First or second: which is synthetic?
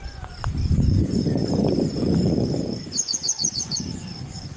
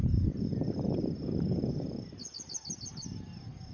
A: first